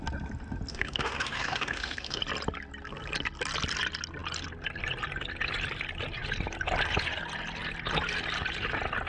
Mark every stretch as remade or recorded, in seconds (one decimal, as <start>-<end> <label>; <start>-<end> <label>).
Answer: 0.0-0.7 recorded; 0.7-2.2 remade; 2.2-9.1 recorded